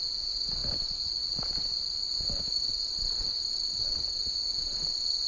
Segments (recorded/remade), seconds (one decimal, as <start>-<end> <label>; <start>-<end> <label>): 0.0-0.6 recorded; 0.6-3.8 remade; 3.8-5.3 recorded